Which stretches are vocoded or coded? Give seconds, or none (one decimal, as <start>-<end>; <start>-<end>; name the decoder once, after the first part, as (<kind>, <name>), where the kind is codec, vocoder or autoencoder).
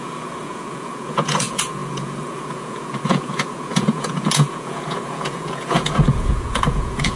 0.0-7.2 (vocoder, Vocos)